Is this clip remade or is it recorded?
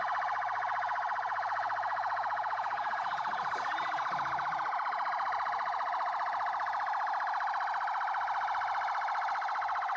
recorded